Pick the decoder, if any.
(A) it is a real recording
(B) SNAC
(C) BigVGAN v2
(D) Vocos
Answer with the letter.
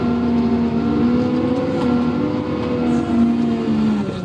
A